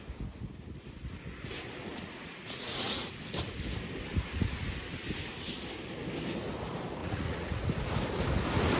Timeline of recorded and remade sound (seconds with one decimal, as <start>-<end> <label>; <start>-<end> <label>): 0.0-1.9 recorded; 1.9-3.2 remade; 3.2-7.0 recorded; 7.0-7.6 remade; 7.6-8.8 recorded